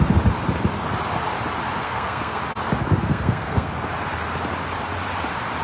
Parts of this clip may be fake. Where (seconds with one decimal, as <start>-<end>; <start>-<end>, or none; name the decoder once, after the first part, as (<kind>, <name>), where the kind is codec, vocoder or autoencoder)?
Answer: 1.8-2.4 (codec, SNAC); 3.1-3.7

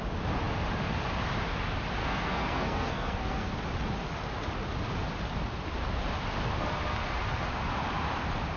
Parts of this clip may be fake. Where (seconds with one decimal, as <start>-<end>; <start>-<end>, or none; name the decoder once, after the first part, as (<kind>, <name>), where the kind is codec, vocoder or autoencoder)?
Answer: 2.0-3.5 (codec, SNAC)

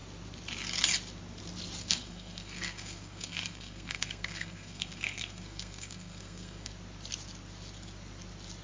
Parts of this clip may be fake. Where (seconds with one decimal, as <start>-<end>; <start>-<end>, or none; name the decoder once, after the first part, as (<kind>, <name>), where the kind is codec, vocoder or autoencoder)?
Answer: 1.8-6.7 (codec, SNAC)

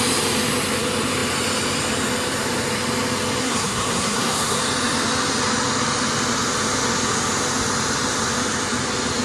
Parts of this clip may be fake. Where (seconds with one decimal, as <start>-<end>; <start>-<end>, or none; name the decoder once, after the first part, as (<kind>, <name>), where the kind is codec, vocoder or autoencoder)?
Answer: 3.4-4.6 (codec, SNAC)